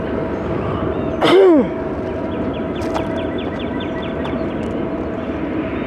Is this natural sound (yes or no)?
yes